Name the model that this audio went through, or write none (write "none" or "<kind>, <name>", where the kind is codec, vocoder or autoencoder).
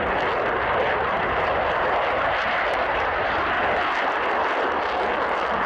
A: none